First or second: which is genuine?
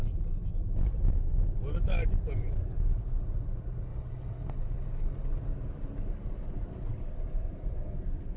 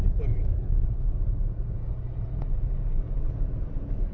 first